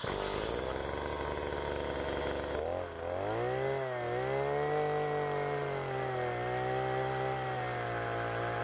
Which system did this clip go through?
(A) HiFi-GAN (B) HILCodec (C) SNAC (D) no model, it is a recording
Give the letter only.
D